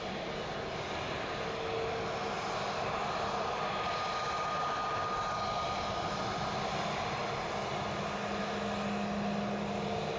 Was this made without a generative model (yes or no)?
yes